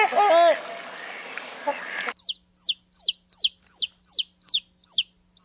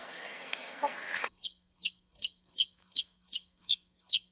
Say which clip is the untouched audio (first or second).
first